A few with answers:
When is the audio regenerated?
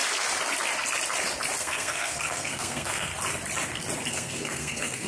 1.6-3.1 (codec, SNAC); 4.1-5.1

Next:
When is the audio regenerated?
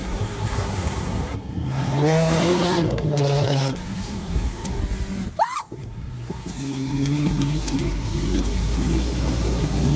0.0-4.8 (codec, SNAC); 5.6-10.0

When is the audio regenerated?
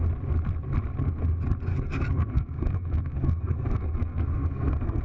1.7-5.0 (codec, SNAC)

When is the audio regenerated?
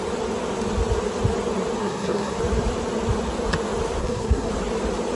1.8-2.4 (codec, SNAC); 4.0-4.5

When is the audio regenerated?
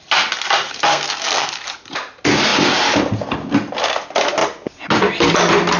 0.9-1.5 (codec, SNAC)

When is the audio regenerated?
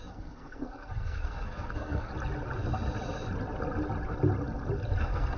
0.0-2.1 (codec, SNAC); 5.0-5.4